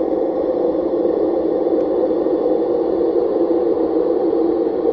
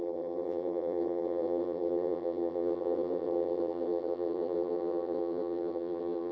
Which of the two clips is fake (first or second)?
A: second